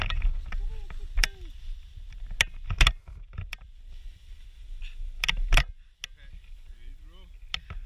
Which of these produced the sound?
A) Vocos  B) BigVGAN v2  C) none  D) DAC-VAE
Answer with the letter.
C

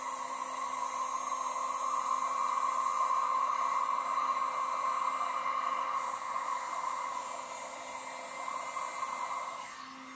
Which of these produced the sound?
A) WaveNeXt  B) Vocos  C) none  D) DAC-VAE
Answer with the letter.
C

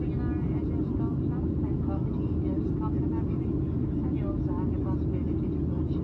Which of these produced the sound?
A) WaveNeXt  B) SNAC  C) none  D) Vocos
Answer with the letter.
C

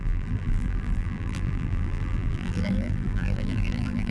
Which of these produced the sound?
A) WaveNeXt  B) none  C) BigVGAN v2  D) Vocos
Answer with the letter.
C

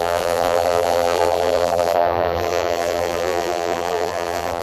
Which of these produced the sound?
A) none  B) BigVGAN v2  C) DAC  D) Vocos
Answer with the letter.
B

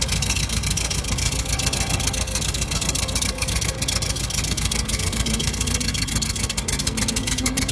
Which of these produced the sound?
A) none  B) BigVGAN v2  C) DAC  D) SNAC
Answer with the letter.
D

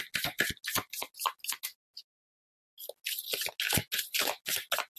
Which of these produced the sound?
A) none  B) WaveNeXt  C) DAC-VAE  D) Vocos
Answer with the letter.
A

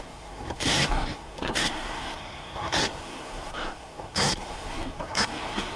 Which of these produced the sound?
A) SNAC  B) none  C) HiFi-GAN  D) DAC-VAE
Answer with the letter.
A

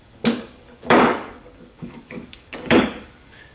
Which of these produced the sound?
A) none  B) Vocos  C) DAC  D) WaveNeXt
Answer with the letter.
C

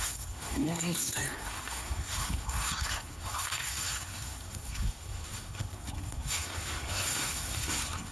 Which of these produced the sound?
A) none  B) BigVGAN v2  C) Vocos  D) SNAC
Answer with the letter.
D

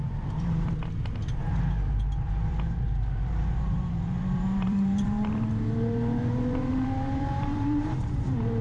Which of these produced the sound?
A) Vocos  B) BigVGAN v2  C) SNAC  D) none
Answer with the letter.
B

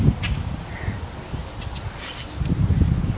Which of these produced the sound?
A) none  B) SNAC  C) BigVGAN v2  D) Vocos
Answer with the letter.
A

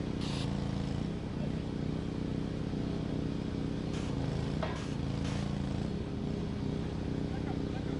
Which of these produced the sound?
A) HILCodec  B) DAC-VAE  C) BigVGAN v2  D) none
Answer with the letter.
D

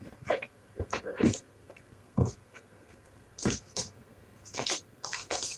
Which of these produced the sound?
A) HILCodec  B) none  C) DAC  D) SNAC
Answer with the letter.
D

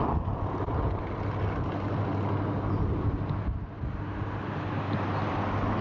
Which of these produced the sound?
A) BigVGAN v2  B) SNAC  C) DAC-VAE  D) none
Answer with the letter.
D